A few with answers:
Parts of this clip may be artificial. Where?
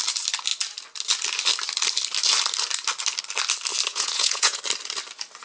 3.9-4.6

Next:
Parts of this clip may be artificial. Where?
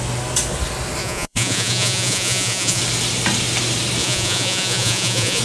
1.0-2.8; 4.0-5.4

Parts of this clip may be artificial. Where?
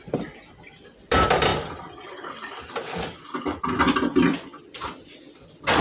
none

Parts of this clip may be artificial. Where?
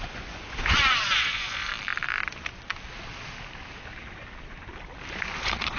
0.0-1.7; 5.2-5.8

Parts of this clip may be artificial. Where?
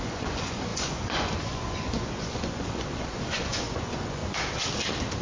0.0-4.2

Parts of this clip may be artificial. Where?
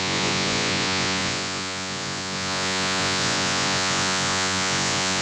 0.0-5.2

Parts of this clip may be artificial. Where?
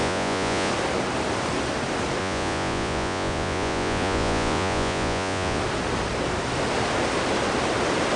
0.0-0.7; 2.2-5.6